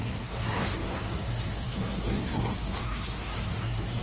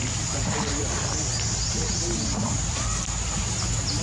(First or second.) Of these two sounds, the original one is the second